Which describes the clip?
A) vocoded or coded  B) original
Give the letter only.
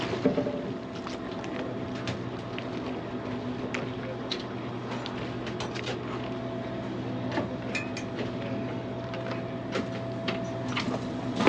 B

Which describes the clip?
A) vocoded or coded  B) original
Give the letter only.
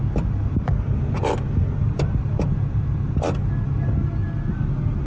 B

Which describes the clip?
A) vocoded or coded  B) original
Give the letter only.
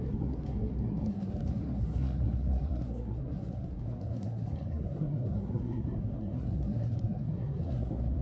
A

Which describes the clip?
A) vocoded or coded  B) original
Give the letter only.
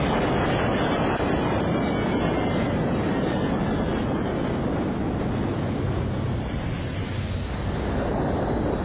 B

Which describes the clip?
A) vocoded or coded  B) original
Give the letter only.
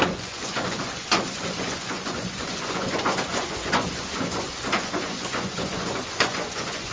A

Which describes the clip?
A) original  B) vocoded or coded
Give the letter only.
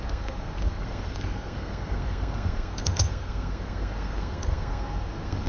B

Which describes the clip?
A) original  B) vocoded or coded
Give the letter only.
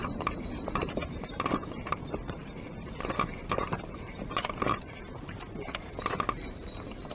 B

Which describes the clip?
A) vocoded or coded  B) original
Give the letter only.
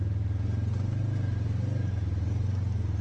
B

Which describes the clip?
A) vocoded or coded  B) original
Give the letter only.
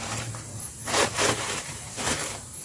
A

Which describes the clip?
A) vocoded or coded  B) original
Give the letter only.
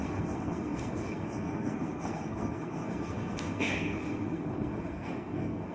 A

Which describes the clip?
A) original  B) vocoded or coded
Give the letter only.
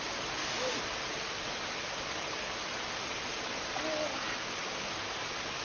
A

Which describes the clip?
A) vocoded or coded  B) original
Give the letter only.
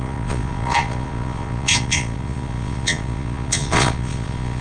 A